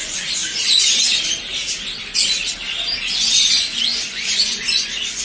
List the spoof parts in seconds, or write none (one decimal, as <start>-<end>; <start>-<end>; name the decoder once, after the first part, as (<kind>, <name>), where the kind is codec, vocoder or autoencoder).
0.0-0.4 (vocoder, Vocos); 3.5-5.2

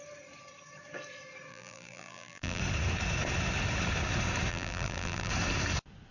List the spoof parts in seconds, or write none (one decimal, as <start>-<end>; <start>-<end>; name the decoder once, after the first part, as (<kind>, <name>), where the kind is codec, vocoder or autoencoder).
1.5-2.6 (vocoder, BigVGAN v2); 4.5-5.3